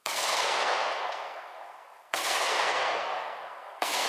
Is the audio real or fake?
fake